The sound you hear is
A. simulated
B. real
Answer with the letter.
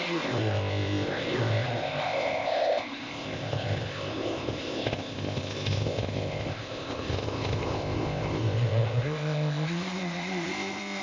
A